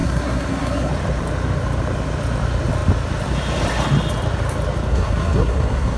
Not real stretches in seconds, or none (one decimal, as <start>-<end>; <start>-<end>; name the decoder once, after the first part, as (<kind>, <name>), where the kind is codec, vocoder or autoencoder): 0.0-0.9 (codec, SNAC); 4.9-6.0